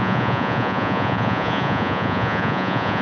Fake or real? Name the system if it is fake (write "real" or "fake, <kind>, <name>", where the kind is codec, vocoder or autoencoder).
fake, vocoder, Vocos